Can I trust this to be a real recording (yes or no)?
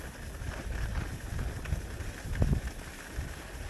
yes